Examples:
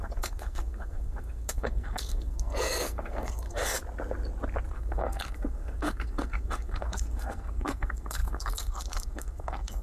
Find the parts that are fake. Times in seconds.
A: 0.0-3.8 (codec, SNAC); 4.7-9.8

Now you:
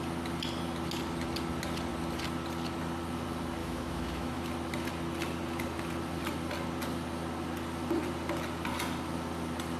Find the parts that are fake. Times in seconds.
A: 3.6-4.4 (autoencoder, DAC-VAE)

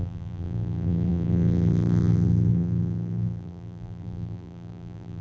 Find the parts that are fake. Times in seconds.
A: 0.0-5.2 (vocoder, BigVGAN v2)

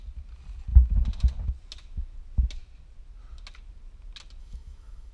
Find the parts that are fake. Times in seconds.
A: 4.4-5.1 (autoencoder, DAC-VAE)

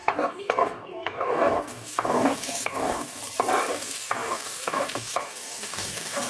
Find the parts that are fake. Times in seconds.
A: 0.0-3.2 (codec, DAC); 3.7-6.3